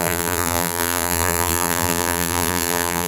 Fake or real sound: fake